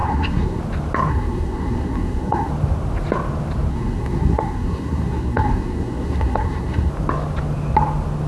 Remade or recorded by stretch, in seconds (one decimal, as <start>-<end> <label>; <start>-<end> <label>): 0.0-0.6 remade; 0.6-1.1 recorded; 1.1-2.5 remade; 2.5-3.7 recorded; 3.7-6.9 remade; 6.9-8.3 recorded